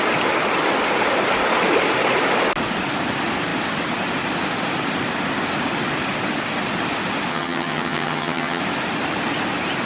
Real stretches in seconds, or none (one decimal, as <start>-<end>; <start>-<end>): 0.0-7.3; 8.6-9.9